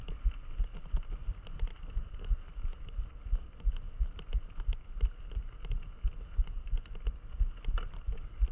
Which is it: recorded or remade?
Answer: recorded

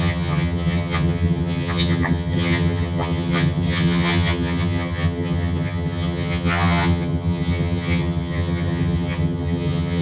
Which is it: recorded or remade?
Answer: remade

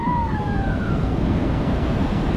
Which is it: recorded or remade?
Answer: remade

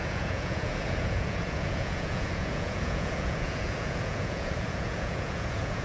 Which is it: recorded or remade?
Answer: remade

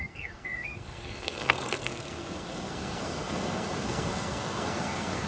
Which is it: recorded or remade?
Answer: remade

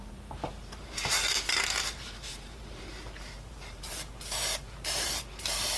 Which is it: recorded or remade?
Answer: remade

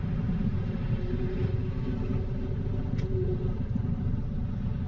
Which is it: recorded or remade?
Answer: recorded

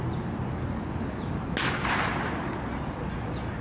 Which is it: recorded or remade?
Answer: recorded